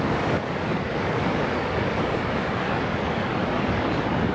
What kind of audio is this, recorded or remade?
remade